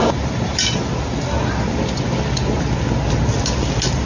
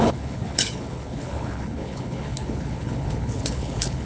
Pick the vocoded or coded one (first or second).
second